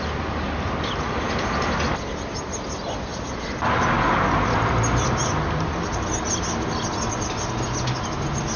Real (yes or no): yes